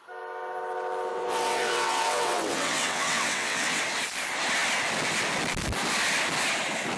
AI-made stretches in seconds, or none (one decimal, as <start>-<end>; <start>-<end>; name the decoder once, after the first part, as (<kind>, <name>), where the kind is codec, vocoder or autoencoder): 1.1-3.8 (vocoder, WaveNeXt)